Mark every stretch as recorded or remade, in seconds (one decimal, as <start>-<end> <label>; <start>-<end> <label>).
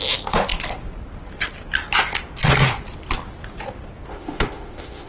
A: 0.0-4.1 recorded; 4.1-5.1 remade